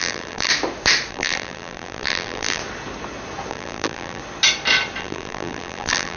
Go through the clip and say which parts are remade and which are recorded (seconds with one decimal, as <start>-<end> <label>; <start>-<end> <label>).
0.0-0.5 remade; 0.5-1.1 recorded; 1.1-2.6 remade; 2.6-3.5 recorded; 3.5-4.2 remade; 4.2-5.0 recorded; 5.0-6.2 remade